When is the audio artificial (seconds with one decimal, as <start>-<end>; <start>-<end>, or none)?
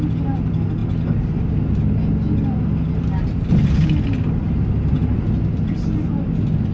none